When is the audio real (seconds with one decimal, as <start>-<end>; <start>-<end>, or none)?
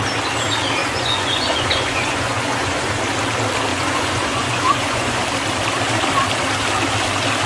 0.0-0.8; 2.9-3.7; 5.2-7.5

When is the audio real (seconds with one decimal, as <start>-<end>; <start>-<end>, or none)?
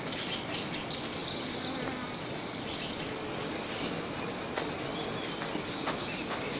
0.0-6.6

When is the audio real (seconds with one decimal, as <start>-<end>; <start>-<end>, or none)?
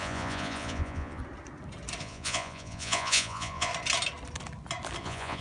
1.2-2.0; 3.7-5.0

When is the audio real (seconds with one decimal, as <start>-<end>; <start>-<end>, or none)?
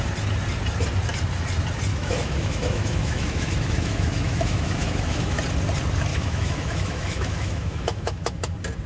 0.0-1.9; 5.4-6.1; 8.5-8.9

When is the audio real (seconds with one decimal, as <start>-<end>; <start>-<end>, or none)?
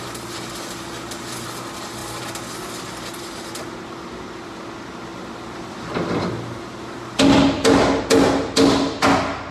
0.0-9.5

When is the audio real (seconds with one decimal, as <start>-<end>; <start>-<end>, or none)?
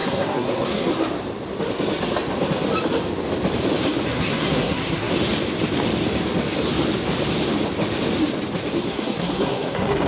0.9-4.1; 5.1-8.8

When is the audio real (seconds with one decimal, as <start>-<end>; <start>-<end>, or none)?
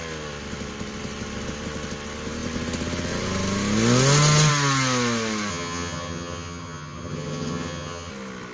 0.0-5.5; 8.1-8.5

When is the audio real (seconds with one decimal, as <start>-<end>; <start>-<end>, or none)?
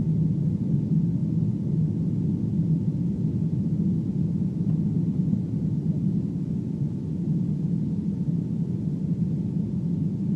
0.0-10.4